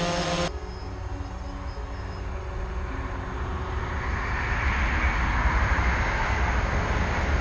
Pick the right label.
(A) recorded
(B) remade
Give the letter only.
A